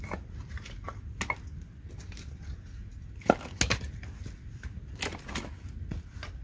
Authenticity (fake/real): real